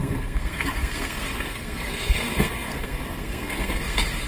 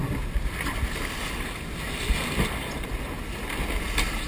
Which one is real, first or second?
second